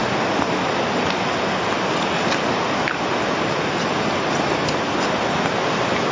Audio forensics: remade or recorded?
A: recorded